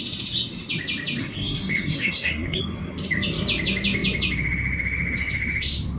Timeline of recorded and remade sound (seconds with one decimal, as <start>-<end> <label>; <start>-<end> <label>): 0.0-1.2 recorded; 1.2-2.6 remade; 2.6-6.0 recorded